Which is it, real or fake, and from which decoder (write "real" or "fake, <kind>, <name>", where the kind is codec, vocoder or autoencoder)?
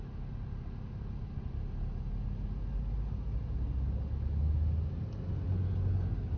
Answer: real